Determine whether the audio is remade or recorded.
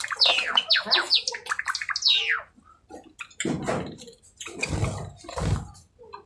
recorded